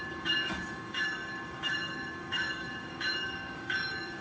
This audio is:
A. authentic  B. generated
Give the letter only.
B